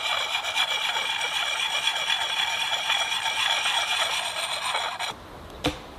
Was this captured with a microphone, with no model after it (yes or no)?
yes